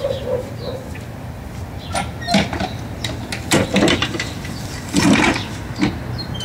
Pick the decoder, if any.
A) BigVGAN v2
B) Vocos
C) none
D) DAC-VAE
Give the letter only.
C